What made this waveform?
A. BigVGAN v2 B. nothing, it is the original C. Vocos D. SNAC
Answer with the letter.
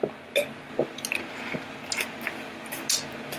B